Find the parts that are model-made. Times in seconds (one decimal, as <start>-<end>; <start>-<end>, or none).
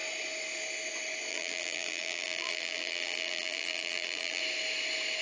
1.3-4.4